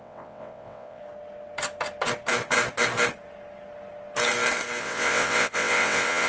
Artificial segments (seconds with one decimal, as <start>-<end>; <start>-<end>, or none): 0.0-1.0; 4.8-6.3